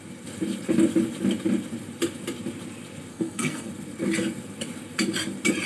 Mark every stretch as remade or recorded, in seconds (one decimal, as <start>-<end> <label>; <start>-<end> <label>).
0.0-3.1 recorded; 3.1-3.7 remade; 3.7-5.7 recorded